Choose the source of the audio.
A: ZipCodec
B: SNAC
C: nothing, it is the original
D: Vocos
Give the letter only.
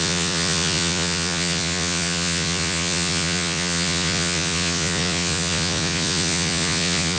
D